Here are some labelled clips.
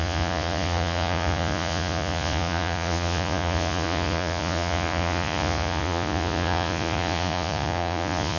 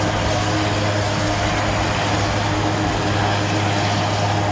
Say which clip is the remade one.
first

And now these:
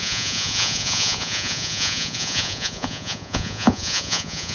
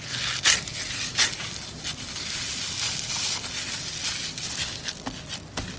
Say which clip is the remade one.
first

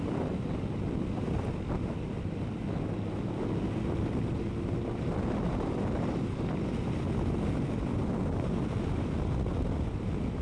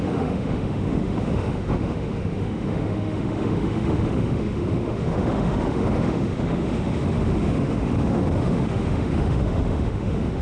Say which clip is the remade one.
second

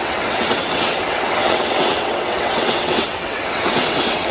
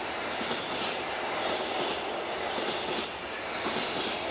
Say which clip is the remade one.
first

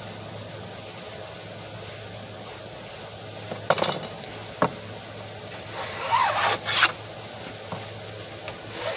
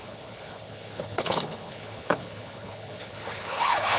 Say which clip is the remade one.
second